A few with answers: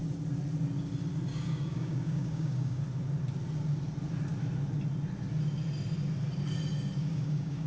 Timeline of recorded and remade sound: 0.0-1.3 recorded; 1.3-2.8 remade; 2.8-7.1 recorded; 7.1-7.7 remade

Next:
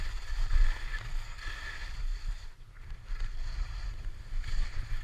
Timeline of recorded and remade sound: 0.0-1.8 recorded; 1.8-2.7 remade; 2.7-5.0 recorded

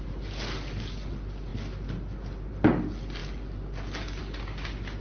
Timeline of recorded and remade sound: 0.0-5.0 recorded

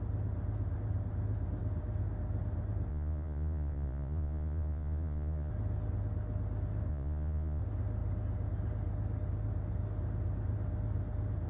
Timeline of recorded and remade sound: 0.0-2.9 recorded; 2.9-5.5 remade; 5.5-6.9 recorded; 6.9-7.6 remade; 7.6-11.5 recorded

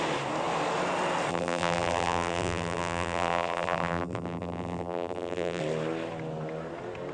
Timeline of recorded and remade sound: 0.0-1.3 recorded; 1.3-5.6 remade; 5.6-7.1 recorded

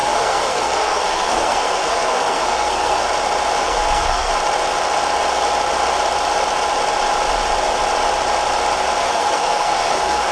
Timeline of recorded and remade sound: 0.0-3.1 remade; 3.1-3.6 recorded; 3.6-4.3 remade; 4.3-9.0 recorded; 9.0-10.3 remade

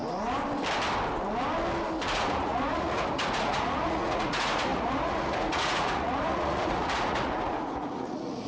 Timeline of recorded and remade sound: 0.0-2.1 recorded; 2.1-8.5 remade